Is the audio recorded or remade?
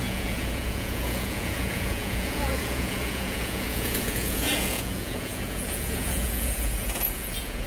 remade